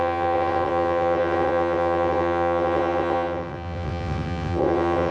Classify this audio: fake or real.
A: fake